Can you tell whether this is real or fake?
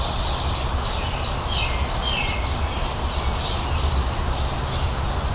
real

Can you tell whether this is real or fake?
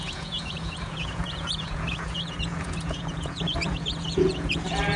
fake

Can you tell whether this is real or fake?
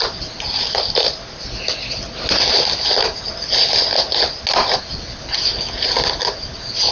real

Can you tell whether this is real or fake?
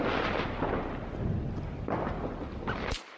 real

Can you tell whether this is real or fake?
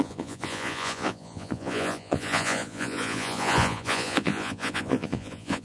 fake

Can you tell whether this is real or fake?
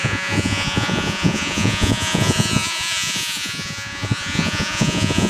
fake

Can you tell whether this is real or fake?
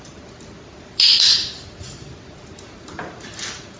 real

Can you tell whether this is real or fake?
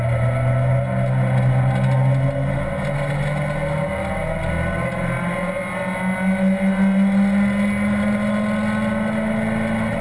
real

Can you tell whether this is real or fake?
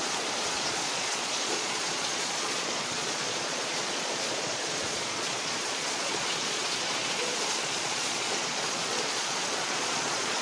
fake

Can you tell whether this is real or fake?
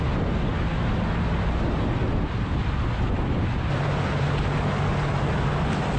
real